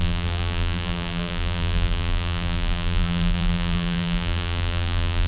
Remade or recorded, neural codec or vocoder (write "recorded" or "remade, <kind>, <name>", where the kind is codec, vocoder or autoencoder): remade, vocoder, BigVGAN v2